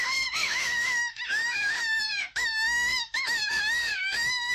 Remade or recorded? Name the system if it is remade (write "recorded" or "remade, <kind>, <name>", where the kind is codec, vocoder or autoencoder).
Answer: remade, autoencoder, DAC-VAE